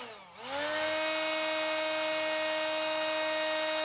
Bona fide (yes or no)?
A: yes